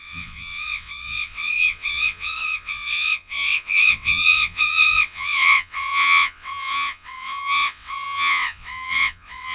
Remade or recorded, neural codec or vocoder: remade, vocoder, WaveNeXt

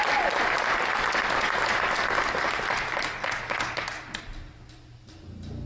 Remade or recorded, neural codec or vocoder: recorded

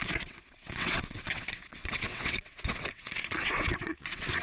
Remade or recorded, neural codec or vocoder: remade, vocoder, WaveNeXt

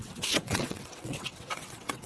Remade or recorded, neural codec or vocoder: remade, vocoder, WaveNeXt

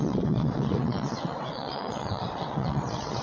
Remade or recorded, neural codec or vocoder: remade, vocoder, WaveNeXt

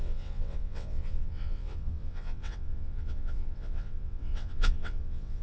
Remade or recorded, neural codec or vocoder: remade, vocoder, WaveNeXt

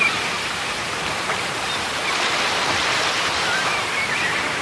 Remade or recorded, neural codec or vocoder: recorded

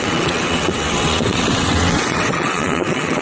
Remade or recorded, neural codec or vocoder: remade, vocoder, WaveNeXt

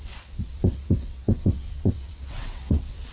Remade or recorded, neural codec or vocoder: remade, vocoder, WaveNeXt